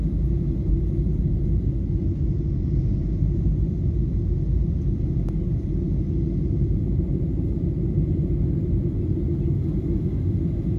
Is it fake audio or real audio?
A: real